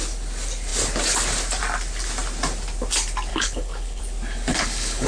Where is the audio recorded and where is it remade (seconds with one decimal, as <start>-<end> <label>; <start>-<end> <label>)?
0.0-3.3 recorded; 3.3-4.0 remade; 4.0-4.5 recorded; 4.5-5.1 remade